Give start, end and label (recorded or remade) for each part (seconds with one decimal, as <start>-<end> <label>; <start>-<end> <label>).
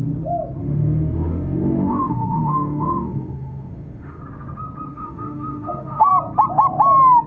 0.0-0.6 recorded; 0.6-4.2 remade; 4.2-4.9 recorded; 4.9-6.1 remade; 6.1-7.3 recorded